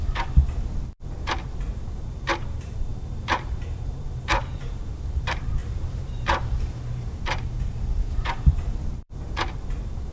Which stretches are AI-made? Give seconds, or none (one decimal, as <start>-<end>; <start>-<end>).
0.0-10.1